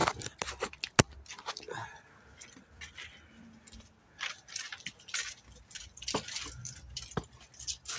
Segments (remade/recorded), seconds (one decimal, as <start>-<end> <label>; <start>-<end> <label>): 0.0-8.0 recorded